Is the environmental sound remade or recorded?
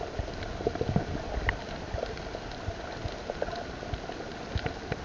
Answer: recorded